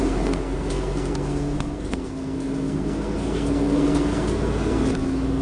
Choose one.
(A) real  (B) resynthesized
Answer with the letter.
B